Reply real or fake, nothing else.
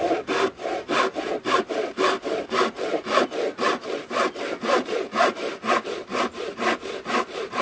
real